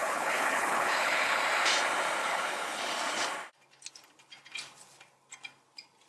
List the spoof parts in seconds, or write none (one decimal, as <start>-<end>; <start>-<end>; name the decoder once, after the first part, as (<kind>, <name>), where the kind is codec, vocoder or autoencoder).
0.0-1.4 (codec, HILCodec); 2.2-2.8